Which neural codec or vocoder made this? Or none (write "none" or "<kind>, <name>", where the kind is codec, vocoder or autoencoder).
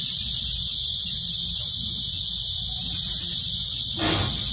none